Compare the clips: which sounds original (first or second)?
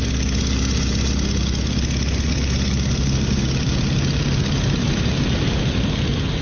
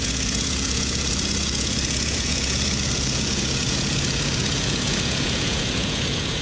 first